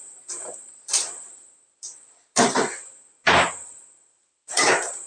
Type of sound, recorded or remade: recorded